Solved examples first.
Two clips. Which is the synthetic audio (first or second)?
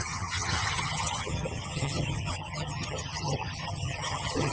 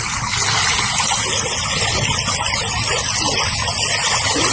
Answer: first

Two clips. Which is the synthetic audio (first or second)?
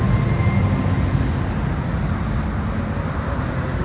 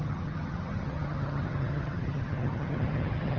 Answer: second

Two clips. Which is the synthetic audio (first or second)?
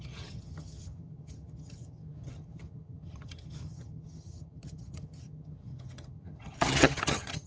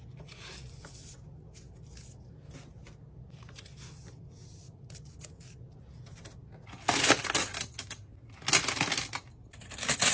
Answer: first